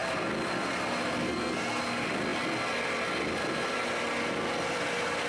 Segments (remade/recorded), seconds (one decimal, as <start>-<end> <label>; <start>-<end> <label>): 0.0-1.2 recorded; 1.2-1.8 remade; 1.8-5.3 recorded